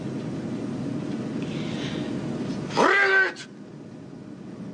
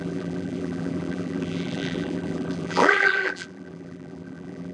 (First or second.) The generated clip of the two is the second